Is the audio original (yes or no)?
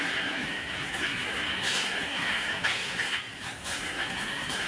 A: no